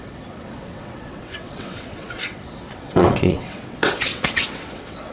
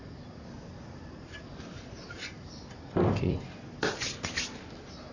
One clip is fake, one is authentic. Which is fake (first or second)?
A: first